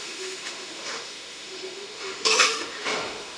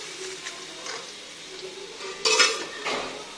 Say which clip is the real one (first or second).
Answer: second